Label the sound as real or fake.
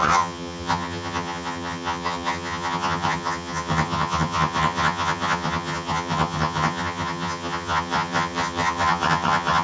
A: fake